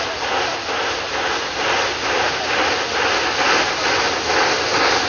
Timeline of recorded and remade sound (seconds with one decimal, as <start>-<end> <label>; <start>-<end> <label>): 0.0-5.1 recorded